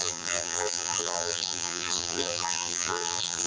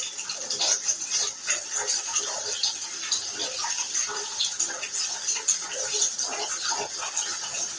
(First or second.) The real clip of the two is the second